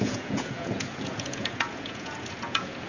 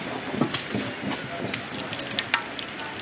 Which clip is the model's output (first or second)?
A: first